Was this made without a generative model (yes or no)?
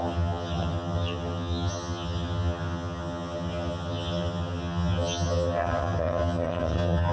no